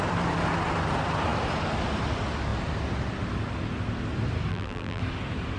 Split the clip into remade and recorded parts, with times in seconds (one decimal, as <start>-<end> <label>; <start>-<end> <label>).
0.0-4.5 recorded; 4.5-5.0 remade; 5.0-5.6 recorded